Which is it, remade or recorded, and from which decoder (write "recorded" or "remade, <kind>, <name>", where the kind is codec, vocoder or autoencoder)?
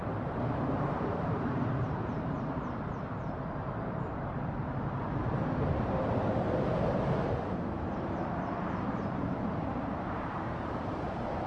remade, vocoder, BigVGAN v2